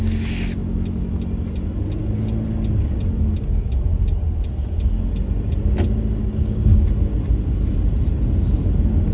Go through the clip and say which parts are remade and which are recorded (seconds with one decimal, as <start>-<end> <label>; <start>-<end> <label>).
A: 0.0-6.2 recorded; 6.2-6.8 remade; 6.8-9.1 recorded